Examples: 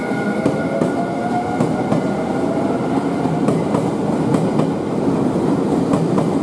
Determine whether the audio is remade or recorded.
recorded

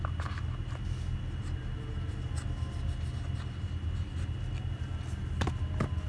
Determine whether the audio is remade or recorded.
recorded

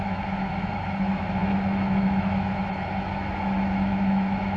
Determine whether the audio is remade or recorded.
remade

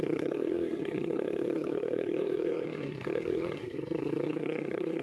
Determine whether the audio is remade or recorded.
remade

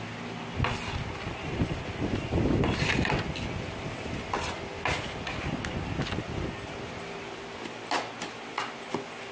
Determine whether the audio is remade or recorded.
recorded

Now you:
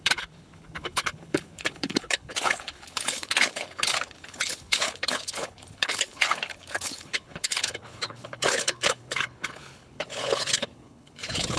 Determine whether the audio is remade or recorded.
remade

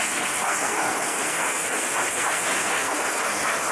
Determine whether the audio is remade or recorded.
remade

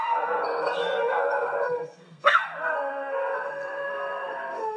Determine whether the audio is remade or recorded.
remade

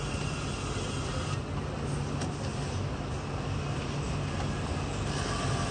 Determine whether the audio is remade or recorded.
recorded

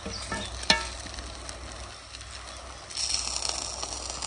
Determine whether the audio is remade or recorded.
recorded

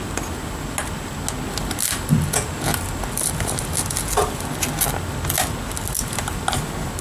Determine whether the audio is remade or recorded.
recorded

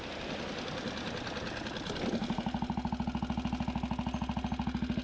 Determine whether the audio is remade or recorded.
recorded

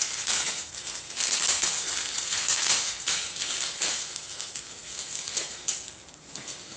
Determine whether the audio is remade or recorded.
remade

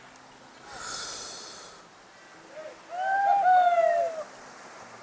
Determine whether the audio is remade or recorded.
recorded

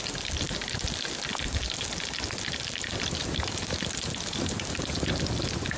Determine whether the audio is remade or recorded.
recorded